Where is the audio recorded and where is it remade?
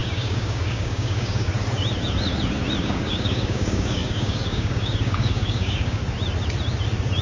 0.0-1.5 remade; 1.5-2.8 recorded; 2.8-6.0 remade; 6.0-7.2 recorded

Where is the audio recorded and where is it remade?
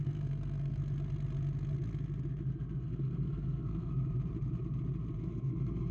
0.0-0.8 remade; 0.8-2.8 recorded; 2.8-3.9 remade; 3.9-5.2 recorded; 5.2-5.9 remade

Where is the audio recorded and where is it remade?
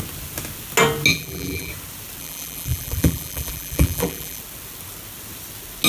0.0-1.1 recorded; 1.1-1.7 remade; 1.7-2.2 recorded; 2.2-4.4 remade; 4.4-5.9 recorded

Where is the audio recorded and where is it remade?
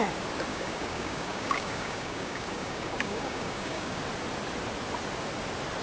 0.0-0.5 recorded; 0.5-4.0 remade; 4.0-5.8 recorded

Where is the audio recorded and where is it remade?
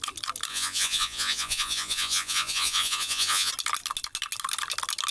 0.0-0.5 recorded; 0.5-3.5 remade; 3.5-5.1 recorded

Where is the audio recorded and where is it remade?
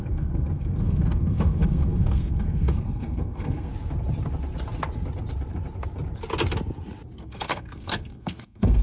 0.0-3.7 remade; 3.7-7.2 recorded; 7.2-8.8 remade